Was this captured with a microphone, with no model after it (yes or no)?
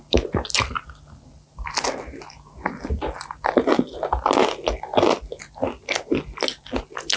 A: yes